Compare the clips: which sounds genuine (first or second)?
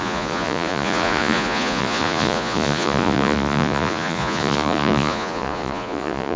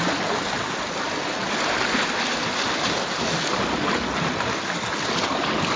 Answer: second